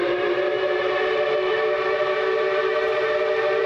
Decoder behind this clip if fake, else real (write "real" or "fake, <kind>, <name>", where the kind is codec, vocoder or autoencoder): fake, vocoder, BigVGAN v2